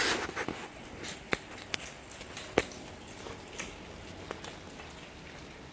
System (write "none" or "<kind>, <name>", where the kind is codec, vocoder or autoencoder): none